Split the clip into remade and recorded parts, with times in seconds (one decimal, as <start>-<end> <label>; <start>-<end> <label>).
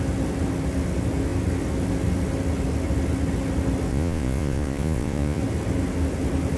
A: 0.0-3.9 recorded; 3.9-5.4 remade; 5.4-6.6 recorded